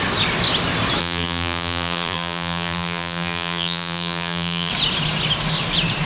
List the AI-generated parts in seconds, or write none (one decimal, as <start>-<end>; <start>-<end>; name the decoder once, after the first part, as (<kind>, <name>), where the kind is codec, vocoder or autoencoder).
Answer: 1.0-4.7 (vocoder, BigVGAN v2)